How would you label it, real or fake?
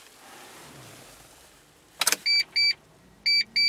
real